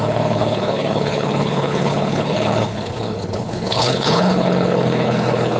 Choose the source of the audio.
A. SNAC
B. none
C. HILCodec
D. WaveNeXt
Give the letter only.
C